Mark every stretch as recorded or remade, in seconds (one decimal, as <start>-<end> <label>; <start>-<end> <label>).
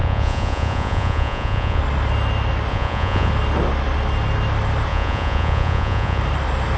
0.0-1.8 remade; 1.8-2.7 recorded; 2.7-3.3 remade; 3.3-4.9 recorded; 4.9-6.2 remade; 6.2-6.8 recorded